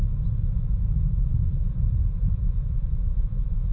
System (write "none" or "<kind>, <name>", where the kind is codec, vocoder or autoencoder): vocoder, Vocos